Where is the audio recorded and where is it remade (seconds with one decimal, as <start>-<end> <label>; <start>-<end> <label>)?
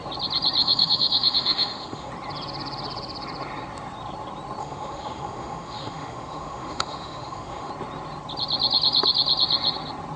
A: 0.0-0.6 recorded; 0.6-2.1 remade; 2.1-4.6 recorded; 4.6-7.7 remade; 7.7-10.2 recorded